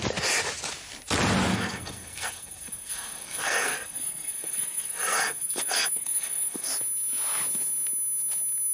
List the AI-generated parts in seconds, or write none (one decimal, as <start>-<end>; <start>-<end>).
1.5-6.7